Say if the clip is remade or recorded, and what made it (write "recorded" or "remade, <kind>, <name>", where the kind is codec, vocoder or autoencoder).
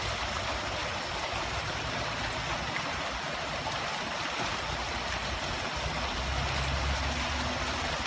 recorded